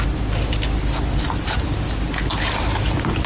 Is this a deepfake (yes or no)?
no